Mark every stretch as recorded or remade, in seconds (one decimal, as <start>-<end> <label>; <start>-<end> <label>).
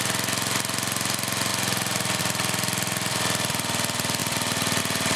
0.0-5.2 recorded